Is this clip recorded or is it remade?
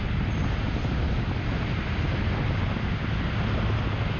recorded